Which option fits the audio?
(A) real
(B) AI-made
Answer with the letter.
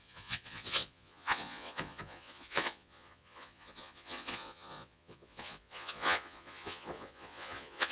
B